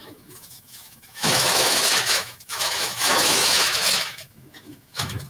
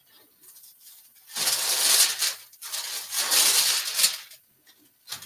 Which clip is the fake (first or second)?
first